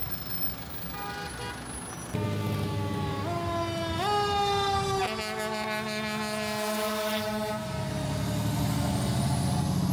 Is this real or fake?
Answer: real